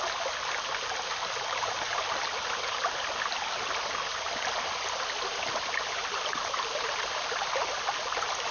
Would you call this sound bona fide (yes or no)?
yes